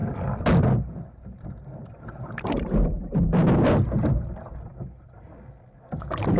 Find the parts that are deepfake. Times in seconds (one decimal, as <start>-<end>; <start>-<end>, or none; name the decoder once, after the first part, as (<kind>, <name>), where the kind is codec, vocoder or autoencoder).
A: 0.0-6.4 (vocoder, BigVGAN v2)